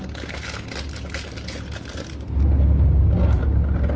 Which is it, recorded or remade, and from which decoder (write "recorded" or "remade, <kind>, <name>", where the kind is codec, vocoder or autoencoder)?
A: recorded